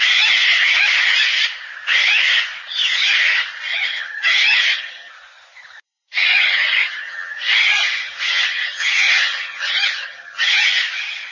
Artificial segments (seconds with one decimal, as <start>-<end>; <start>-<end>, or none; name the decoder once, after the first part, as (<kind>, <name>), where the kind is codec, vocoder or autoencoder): 3.7-5.1 (vocoder, HiFi-GAN); 6.3-10.7